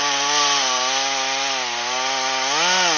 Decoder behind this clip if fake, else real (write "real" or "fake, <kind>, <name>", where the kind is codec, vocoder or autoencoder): real